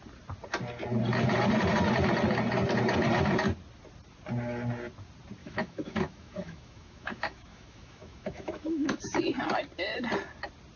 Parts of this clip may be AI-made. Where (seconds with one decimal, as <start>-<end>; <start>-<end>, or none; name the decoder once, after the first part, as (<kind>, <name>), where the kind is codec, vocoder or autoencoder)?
5.4-9.2 (autoencoder, DAC-VAE)